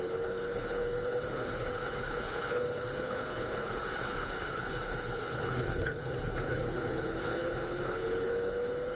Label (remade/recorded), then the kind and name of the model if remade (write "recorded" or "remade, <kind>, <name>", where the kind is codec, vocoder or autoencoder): remade, codec, HILCodec